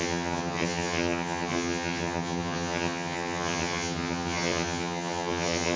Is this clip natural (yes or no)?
no